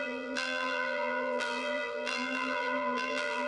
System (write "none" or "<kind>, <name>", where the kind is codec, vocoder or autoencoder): vocoder, BigVGAN v2